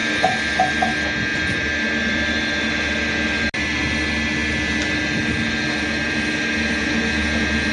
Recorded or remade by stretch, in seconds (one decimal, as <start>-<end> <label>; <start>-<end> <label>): 0.0-1.3 recorded; 1.3-2.4 remade; 2.4-7.7 recorded